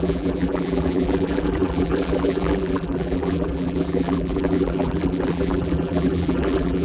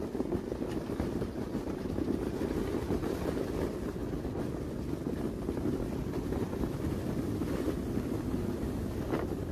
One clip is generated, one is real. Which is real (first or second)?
second